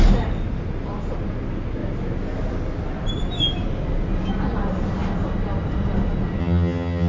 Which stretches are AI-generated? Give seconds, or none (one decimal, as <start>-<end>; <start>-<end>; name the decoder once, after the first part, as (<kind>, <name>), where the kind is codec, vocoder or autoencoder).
6.4-7.1 (vocoder, HiFi-GAN)